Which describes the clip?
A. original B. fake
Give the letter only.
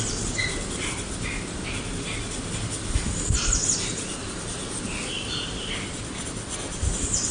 A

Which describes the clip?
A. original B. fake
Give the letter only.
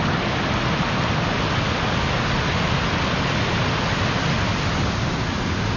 A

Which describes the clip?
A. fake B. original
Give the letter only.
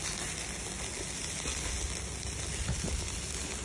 B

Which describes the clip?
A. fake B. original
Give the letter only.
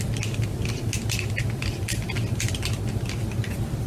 B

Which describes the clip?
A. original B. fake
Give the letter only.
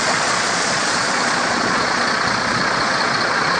B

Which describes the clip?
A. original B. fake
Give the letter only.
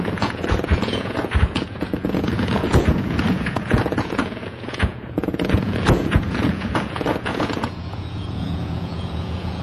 B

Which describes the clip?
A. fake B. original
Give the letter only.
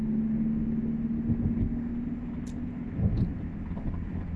B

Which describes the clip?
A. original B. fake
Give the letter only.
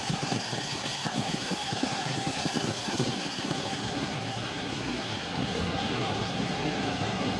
B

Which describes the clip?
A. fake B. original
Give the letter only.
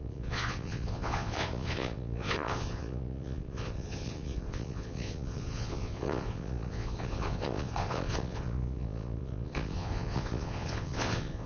A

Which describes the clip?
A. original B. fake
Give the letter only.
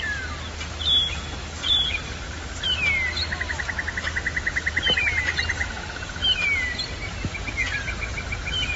A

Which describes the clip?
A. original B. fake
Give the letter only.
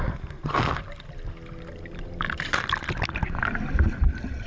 A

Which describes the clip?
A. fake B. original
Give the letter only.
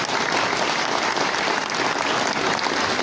B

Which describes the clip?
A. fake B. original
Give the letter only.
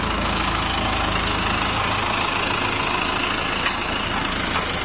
B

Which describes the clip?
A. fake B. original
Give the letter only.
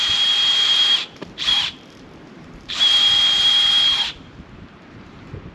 A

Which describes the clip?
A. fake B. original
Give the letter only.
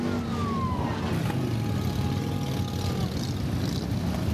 B